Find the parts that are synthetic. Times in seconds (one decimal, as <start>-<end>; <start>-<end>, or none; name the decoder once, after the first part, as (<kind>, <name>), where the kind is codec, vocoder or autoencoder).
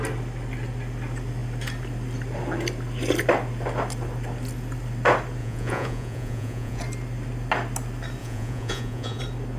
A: 5.4-6.8 (vocoder, Vocos); 8.2-9.2